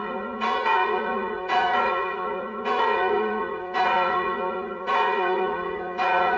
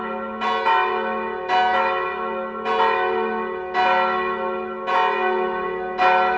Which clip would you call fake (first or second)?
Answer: first